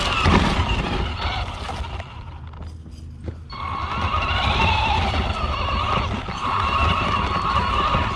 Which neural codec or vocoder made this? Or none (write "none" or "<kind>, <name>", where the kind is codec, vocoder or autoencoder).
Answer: none